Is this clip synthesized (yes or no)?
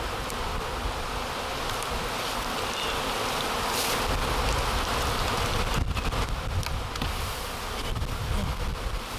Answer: no